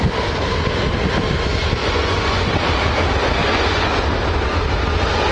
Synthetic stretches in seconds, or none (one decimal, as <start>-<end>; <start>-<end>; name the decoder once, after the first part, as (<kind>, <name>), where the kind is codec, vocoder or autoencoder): 1.8-2.5 (vocoder, Vocos); 3.4-3.9